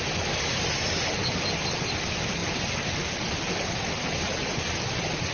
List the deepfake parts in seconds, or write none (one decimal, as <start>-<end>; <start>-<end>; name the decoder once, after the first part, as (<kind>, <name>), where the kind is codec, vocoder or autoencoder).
none